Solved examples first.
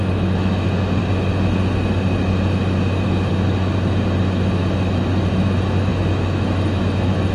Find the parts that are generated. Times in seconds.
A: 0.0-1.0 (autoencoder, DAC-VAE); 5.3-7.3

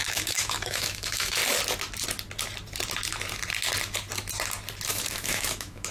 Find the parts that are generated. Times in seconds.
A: 0.0-1.4 (autoencoder, DAC-VAE); 4.9-5.9

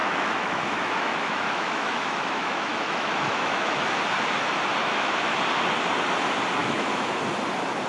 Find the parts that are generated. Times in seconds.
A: 0.0-3.8 (autoencoder, DAC-VAE); 4.8-5.3; 6.6-7.2

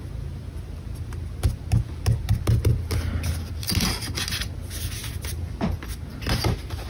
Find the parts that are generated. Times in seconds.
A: none

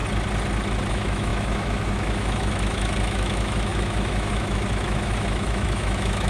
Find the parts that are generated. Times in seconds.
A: 0.9-6.3 (autoencoder, DAC-VAE)

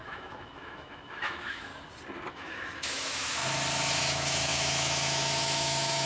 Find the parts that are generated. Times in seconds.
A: 0.0-1.7 (autoencoder, DAC-VAE); 2.3-3.4; 4.0-6.1